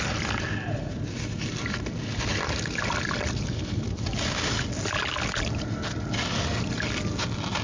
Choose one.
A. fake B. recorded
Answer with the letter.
B